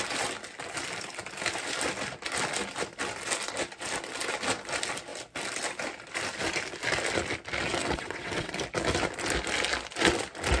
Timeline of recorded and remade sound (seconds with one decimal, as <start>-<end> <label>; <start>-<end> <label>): 0.0-7.8 recorded; 7.8-8.5 remade; 8.5-10.6 recorded